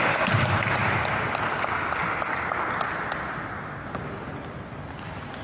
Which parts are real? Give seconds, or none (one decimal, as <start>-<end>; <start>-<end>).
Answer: 0.0-5.4